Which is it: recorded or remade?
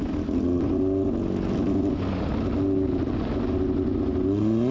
recorded